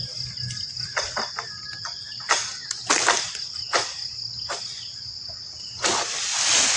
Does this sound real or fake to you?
real